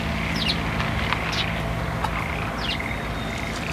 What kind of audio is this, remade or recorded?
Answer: recorded